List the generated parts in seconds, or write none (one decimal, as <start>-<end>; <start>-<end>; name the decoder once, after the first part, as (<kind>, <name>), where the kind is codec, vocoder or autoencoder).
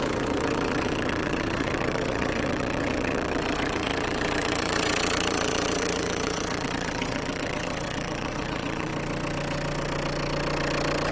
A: 0.0-8.9 (vocoder, WaveNeXt)